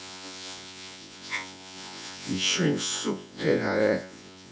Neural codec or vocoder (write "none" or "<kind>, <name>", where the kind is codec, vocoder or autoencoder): vocoder, Vocos